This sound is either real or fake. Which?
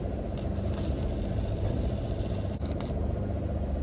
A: real